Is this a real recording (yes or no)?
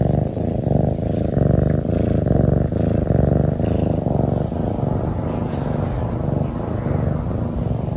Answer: yes